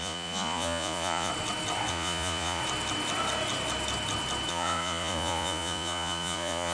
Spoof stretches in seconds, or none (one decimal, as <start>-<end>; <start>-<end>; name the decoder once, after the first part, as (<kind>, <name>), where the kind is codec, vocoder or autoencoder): 0.0-1.3 (vocoder, Vocos); 1.9-2.6; 4.5-6.7